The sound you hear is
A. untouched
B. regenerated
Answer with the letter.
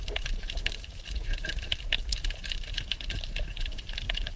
B